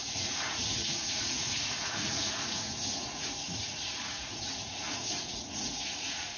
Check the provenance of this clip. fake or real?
fake